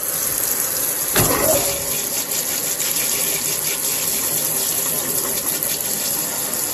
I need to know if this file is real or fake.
real